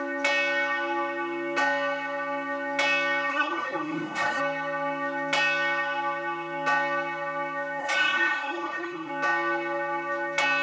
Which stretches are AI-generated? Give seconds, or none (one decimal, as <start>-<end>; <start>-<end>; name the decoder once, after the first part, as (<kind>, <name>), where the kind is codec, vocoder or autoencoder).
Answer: 3.3-4.4 (codec, SNAC); 7.8-9.1